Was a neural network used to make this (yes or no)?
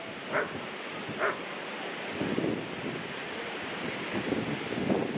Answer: no